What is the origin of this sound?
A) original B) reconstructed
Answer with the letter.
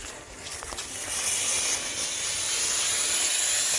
A